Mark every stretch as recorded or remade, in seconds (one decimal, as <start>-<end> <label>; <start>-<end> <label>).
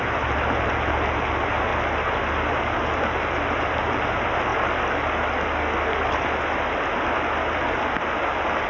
0.0-1.7 remade; 1.7-2.5 recorded; 2.5-4.5 remade; 4.5-7.5 recorded; 7.5-8.7 remade